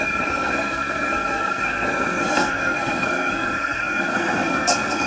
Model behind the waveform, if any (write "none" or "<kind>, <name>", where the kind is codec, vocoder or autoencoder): codec, SNAC